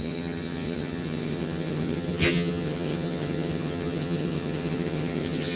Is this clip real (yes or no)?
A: no